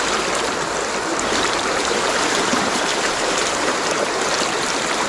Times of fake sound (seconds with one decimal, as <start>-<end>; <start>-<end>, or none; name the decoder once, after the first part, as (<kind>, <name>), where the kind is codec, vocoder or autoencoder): 1.1-4.2 (vocoder, BigVGAN v2)